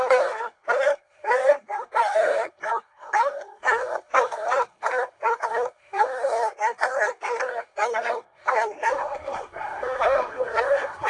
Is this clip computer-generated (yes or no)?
yes